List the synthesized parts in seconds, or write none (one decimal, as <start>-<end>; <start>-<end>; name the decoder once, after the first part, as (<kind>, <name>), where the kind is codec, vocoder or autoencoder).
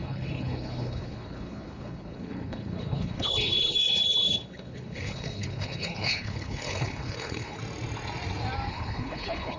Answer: 0.0-7.6 (codec, HILCodec); 8.7-9.6